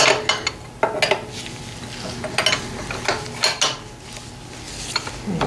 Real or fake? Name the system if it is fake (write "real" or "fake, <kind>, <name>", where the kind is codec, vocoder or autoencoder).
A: real